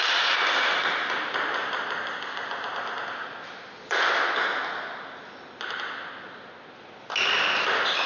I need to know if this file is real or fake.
real